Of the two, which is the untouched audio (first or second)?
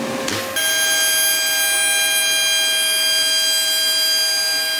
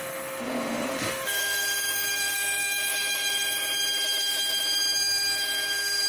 first